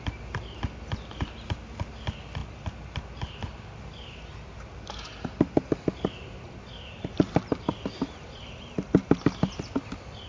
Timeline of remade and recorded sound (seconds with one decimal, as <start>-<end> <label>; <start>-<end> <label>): 0.0-10.3 recorded